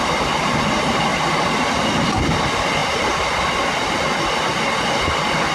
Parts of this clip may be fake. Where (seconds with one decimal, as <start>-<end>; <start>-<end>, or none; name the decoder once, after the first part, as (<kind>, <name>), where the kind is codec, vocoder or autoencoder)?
1.1-2.3 (vocoder, BigVGAN v2); 2.8-4.3